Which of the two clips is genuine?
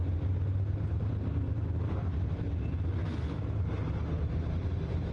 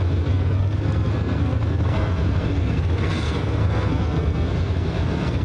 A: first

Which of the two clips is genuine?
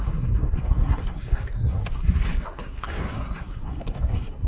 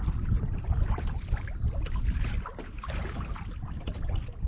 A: second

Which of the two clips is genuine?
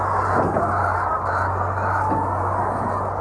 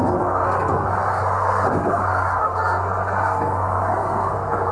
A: first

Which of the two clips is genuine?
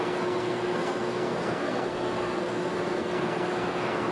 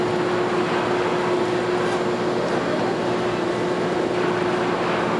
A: second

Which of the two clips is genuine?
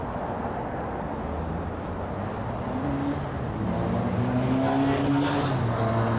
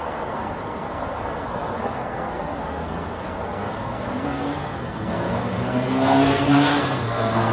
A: first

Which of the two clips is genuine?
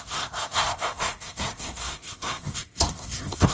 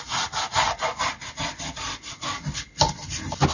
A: second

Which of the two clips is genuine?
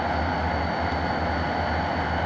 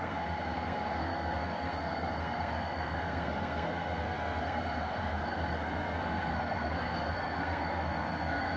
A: first